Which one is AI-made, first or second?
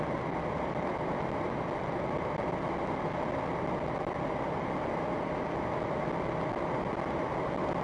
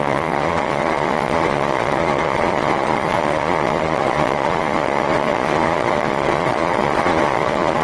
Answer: second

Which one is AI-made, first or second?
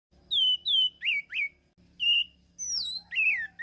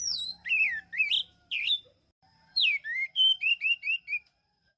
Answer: second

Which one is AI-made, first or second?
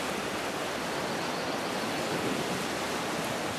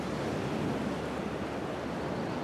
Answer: first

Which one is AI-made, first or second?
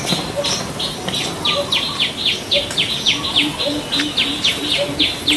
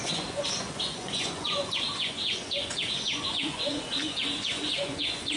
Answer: second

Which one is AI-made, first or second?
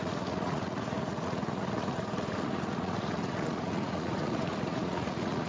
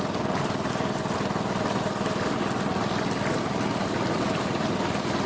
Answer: first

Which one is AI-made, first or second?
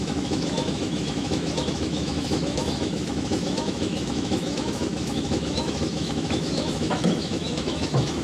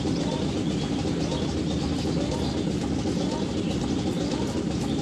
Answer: first